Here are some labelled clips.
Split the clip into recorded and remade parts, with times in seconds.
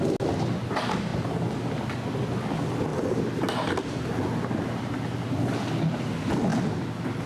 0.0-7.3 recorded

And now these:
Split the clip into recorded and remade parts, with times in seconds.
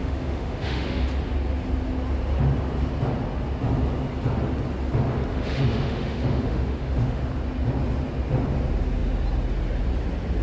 0.0-1.0 remade; 1.0-5.3 recorded; 5.3-7.2 remade; 7.2-10.4 recorded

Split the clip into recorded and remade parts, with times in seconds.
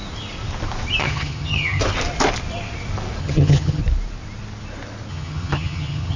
0.0-1.0 recorded; 1.0-1.8 remade; 1.8-3.2 recorded; 3.2-3.8 remade; 3.8-5.1 recorded; 5.1-6.2 remade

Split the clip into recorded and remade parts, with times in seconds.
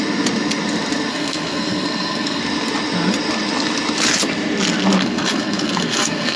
0.0-1.1 recorded; 1.1-2.4 remade; 2.4-5.0 recorded; 5.0-6.4 remade